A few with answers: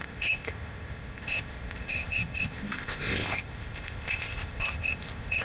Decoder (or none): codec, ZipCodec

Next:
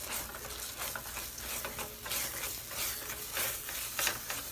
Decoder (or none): none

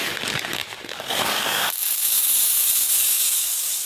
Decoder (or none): codec, DAC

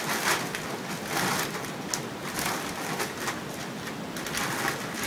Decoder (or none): none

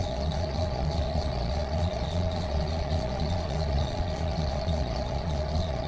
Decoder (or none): vocoder, Vocos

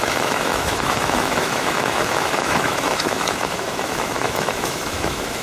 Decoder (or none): autoencoder, DAC-VAE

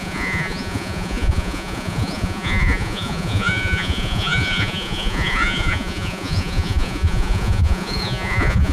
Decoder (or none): vocoder, Vocos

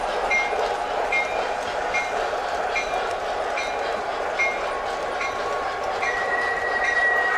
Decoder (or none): vocoder, BigVGAN v2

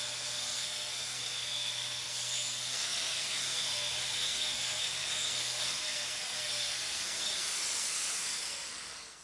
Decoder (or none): codec, SNAC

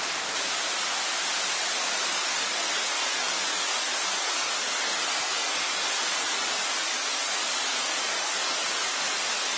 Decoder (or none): none